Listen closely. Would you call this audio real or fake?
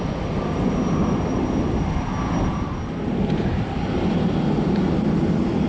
real